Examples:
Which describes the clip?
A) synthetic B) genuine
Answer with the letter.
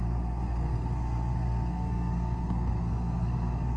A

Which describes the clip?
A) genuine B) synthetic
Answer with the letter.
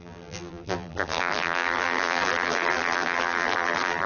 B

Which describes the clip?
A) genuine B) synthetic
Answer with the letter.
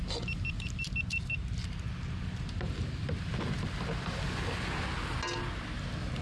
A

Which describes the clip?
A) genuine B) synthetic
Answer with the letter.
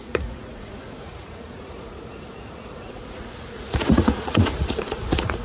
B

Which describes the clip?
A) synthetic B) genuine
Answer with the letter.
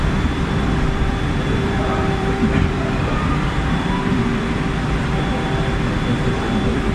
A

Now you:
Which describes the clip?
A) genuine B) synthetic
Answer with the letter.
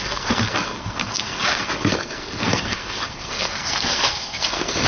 B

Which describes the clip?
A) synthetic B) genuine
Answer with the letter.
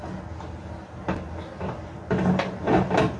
B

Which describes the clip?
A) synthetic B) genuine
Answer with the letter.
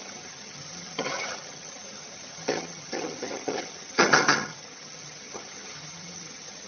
A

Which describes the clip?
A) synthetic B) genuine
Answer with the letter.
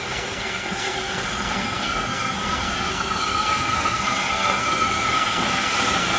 A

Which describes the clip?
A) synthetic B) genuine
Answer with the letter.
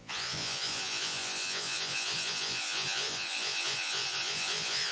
A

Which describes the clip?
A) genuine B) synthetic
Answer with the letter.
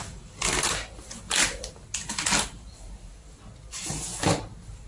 A